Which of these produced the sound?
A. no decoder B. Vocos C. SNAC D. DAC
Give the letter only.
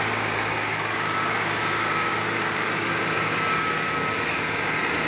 D